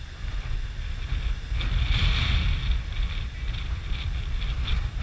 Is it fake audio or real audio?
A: real